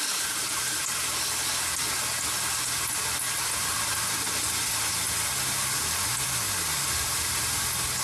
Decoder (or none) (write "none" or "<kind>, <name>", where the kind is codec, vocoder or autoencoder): none